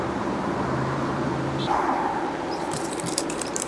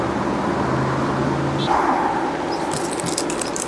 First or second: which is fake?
first